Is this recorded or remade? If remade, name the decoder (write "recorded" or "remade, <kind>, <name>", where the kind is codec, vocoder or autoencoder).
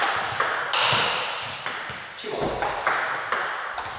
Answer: recorded